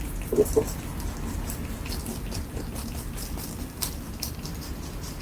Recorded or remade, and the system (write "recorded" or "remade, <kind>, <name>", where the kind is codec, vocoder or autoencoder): recorded